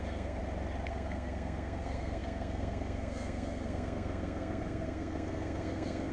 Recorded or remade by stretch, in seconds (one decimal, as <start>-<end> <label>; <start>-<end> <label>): 0.0-0.4 remade; 0.4-0.9 recorded; 0.9-6.1 remade